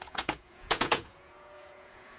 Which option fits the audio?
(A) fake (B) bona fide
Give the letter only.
A